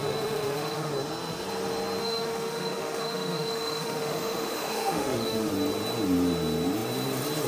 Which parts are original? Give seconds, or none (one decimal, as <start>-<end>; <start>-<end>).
0.9-2.0; 5.5-7.5

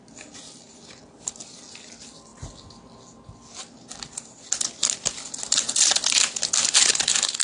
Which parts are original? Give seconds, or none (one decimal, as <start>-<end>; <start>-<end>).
0.0-7.4

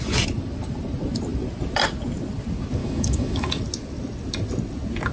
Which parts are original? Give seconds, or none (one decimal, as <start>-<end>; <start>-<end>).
0.0-2.8; 3.6-5.1